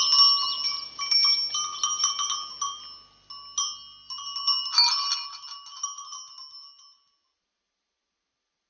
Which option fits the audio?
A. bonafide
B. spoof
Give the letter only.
A